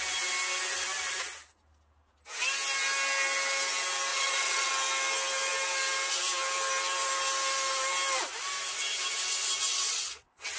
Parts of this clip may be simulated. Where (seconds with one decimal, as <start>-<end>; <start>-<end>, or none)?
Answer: 4.1-4.7; 9.7-10.6